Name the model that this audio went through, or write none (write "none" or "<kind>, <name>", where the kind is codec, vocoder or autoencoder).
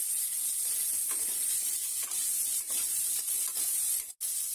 vocoder, BigVGAN v2